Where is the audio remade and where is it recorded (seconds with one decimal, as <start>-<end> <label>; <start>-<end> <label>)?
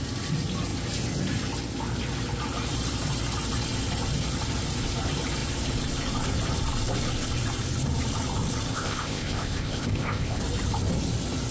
0.0-8.7 recorded; 8.7-10.4 remade; 10.4-11.5 recorded